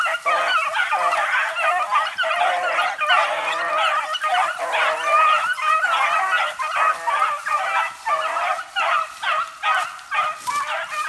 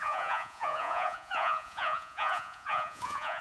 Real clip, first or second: first